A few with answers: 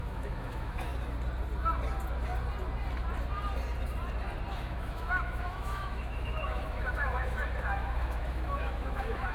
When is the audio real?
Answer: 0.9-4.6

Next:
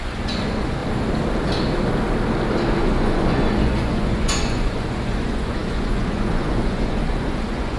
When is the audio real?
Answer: 0.8-2.8

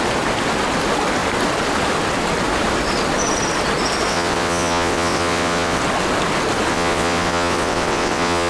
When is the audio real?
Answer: 0.0-4.1; 5.8-6.7

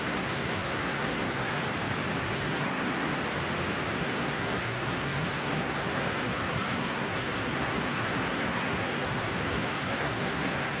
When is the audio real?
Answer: 1.6-2.2; 3.2-4.0

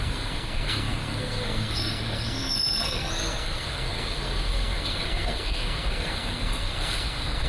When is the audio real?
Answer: none

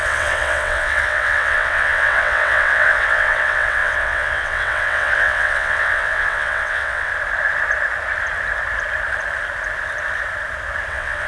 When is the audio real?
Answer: 7.1-10.9

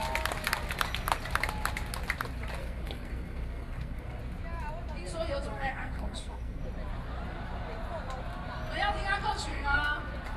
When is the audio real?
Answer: 0.0-2.6; 4.2-5.5; 6.6-9.5; 10.0-10.4

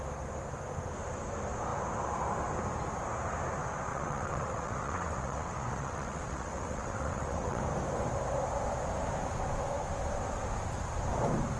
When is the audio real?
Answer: 0.0-3.9; 7.6-11.6